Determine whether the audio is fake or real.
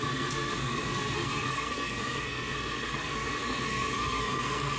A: fake